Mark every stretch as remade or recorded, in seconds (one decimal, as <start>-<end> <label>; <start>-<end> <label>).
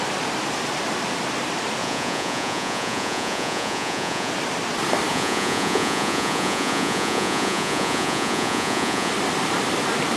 0.0-1.8 recorded; 1.8-4.3 remade; 4.3-5.1 recorded; 5.1-9.1 remade; 9.1-10.2 recorded